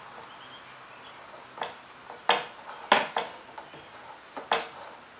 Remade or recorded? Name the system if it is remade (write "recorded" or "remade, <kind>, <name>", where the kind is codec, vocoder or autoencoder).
recorded